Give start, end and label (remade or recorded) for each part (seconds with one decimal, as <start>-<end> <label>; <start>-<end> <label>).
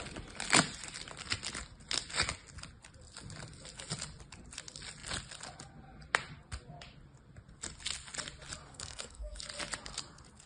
0.0-8.7 recorded; 8.7-9.4 remade; 9.4-10.5 recorded